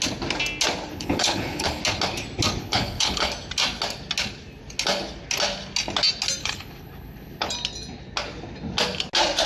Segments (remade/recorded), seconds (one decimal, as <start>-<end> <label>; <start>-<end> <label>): 0.0-0.9 recorded; 0.9-1.8 remade; 1.8-2.6 recorded; 2.6-3.3 remade; 3.3-6.4 recorded; 6.4-7.5 remade; 7.5-9.5 recorded